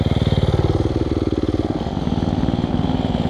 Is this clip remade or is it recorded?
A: recorded